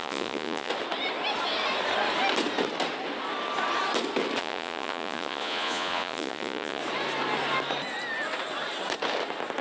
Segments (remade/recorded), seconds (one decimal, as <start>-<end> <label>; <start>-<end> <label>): 0.0-0.7 remade; 0.7-4.4 recorded; 4.4-6.8 remade; 6.8-9.6 recorded